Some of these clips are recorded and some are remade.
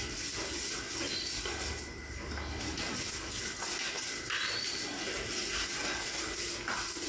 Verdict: recorded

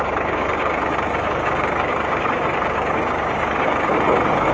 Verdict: remade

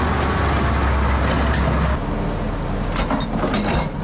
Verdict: recorded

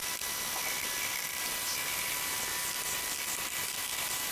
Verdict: recorded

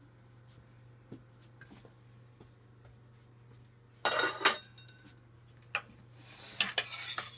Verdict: recorded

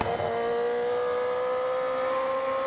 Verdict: recorded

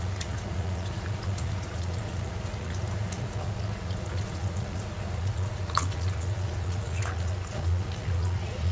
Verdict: remade